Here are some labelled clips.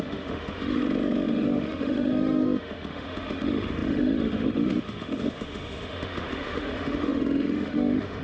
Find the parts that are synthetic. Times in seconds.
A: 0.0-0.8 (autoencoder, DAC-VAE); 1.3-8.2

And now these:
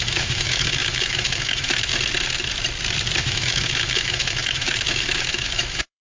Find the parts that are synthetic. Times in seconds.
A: 0.0-1.9 (autoencoder, DAC-VAE); 3.2-6.0

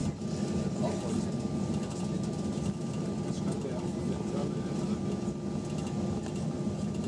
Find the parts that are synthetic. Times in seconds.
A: none

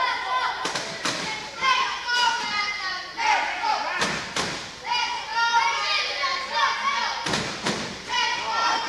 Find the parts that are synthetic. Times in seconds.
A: 1.6-2.3 (autoencoder, DAC-VAE)

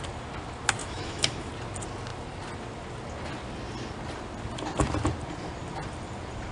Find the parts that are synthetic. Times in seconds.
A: 0.8-1.5 (autoencoder, DAC-VAE)

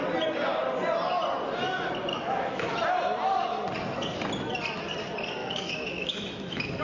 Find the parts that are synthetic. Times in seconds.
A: 2.1-2.8 (autoencoder, DAC-VAE); 5.4-6.8

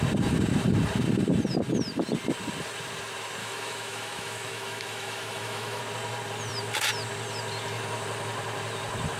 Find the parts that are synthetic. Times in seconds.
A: 3.4-5.8 (autoencoder, DAC-VAE)